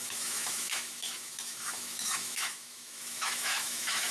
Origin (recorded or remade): remade